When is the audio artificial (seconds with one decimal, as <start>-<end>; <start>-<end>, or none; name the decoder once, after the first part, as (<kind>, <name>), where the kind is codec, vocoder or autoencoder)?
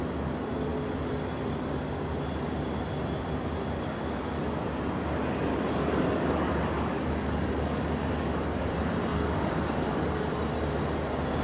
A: 5.5-8.6 (codec, DAC); 9.1-10.3